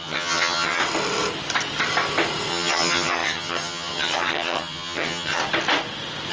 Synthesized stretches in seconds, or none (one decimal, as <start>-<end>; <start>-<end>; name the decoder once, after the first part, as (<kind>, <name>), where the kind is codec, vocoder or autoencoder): 0.0-0.8 (vocoder, HiFi-GAN); 2.5-5.4